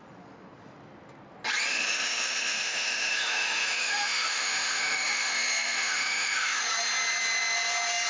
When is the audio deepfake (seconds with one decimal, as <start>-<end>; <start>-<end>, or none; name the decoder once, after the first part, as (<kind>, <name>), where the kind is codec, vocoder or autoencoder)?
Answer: 1.7-6.6 (autoencoder, DAC-VAE)